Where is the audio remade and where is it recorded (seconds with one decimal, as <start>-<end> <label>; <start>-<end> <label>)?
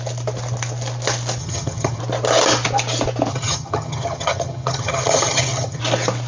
0.0-1.4 recorded; 1.4-2.0 remade; 2.0-3.3 recorded; 3.3-5.8 remade; 5.8-6.3 recorded